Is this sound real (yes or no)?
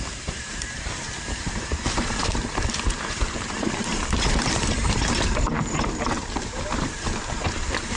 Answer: no